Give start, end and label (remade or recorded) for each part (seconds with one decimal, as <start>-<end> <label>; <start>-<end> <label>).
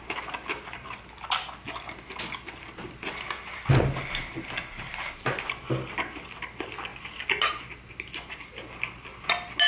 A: 0.0-9.7 recorded